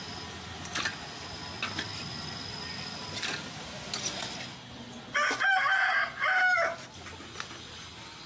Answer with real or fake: real